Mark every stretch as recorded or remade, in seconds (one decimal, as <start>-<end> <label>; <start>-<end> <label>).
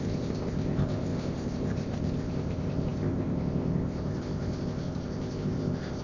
0.0-6.0 remade